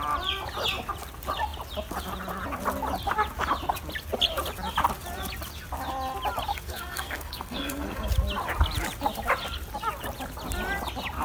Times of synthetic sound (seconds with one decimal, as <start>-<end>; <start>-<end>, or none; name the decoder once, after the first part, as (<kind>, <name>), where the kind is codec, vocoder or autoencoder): 6.5-8.1 (codec, SNAC)